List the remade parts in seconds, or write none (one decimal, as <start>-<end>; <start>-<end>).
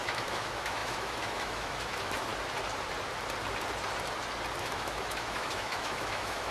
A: 0.0-2.3; 4.6-6.5